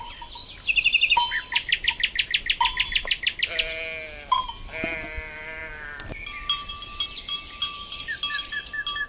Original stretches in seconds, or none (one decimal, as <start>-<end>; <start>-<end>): 0.0-9.1